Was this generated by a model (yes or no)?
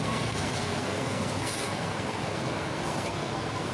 yes